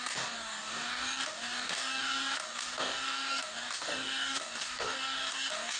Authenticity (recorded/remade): remade